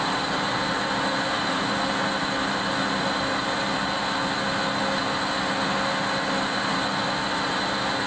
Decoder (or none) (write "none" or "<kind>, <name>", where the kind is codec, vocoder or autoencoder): none